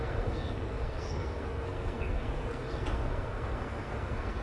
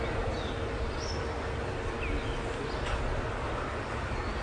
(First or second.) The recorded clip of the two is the second